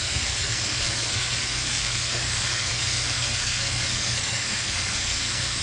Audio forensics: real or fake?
fake